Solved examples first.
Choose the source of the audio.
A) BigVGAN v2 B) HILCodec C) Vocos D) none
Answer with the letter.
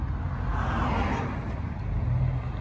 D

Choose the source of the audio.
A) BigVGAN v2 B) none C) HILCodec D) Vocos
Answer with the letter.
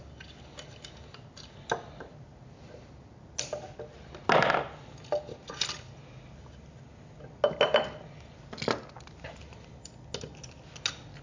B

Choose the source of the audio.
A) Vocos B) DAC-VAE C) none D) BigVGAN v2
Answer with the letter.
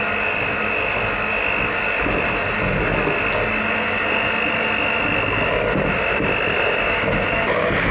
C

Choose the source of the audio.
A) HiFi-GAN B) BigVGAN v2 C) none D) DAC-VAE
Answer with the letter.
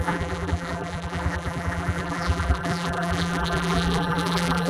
B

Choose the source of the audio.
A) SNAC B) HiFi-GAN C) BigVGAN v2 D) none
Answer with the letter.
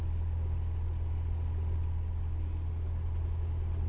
D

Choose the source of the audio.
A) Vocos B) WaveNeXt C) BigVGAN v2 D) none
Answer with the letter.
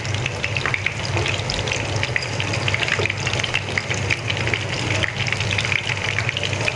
C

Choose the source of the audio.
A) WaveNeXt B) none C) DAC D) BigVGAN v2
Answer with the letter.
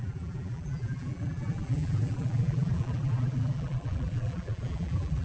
D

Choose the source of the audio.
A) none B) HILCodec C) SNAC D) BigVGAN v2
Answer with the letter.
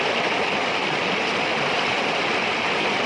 A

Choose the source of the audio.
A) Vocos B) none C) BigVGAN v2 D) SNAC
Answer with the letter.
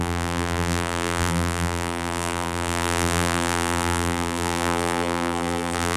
C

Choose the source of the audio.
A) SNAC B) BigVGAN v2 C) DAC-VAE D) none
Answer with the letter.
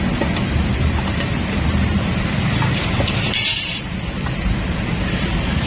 B